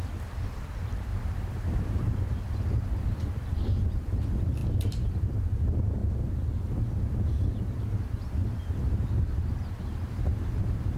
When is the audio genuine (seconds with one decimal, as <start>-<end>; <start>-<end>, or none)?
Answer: none